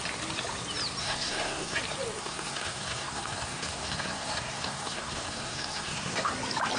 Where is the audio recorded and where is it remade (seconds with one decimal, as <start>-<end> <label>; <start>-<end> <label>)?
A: 0.0-1.0 recorded; 1.0-1.8 remade; 1.8-2.2 recorded; 2.2-6.3 remade; 6.3-6.8 recorded